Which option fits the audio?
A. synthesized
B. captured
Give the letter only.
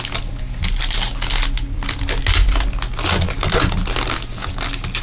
B